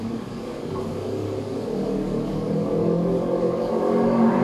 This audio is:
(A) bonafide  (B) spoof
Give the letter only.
B